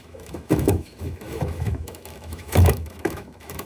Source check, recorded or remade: remade